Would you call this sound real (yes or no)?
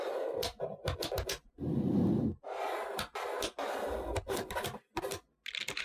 yes